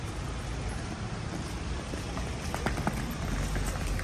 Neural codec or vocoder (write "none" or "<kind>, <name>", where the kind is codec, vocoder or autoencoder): none